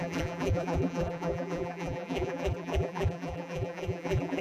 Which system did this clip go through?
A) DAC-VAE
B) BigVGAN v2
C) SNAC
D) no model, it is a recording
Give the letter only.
B